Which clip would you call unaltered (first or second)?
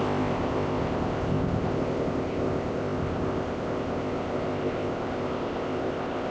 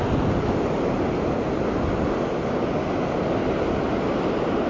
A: second